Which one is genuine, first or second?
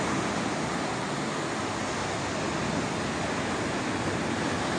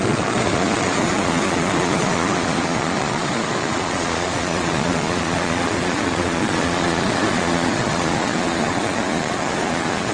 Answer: first